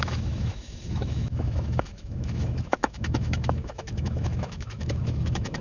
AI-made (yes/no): yes